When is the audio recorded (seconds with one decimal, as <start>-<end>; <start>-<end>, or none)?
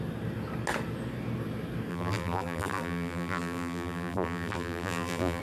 0.0-1.9